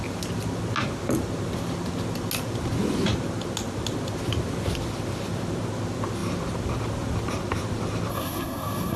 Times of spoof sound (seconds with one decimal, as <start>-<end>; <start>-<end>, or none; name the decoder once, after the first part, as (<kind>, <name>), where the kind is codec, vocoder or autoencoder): 8.1-9.0 (codec, SNAC)